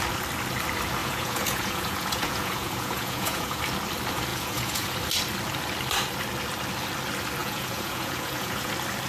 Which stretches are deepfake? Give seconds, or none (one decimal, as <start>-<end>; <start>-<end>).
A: 1.0-3.6; 4.3-5.0; 7.4-8.7